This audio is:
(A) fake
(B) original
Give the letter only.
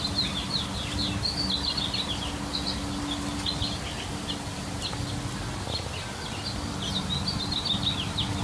B